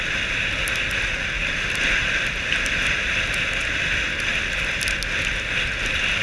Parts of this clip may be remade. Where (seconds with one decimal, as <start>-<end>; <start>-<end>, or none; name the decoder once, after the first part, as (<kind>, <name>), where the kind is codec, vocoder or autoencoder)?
1.4-3.8 (vocoder, BigVGAN v2)